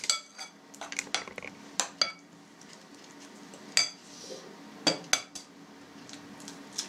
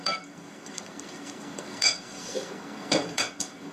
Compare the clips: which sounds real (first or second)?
first